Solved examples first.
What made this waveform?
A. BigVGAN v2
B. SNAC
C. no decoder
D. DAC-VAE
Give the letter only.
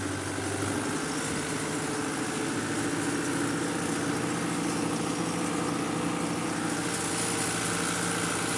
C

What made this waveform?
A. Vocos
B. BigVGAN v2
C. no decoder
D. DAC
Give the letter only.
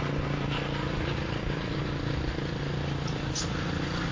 C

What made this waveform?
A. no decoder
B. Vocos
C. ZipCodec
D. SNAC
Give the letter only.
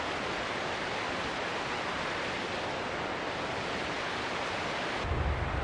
A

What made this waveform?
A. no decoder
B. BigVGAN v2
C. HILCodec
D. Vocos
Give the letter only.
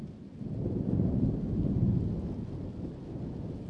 A